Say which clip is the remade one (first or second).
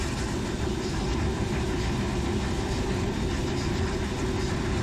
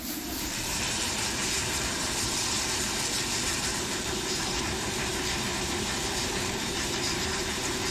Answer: second